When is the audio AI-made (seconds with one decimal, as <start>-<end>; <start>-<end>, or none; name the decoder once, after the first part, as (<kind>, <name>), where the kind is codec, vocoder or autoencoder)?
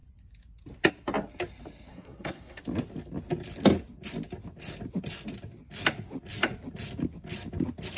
1.9-2.6 (codec, SNAC)